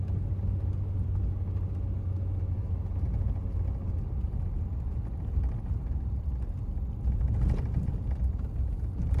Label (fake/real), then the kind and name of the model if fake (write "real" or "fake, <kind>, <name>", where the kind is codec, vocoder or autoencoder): real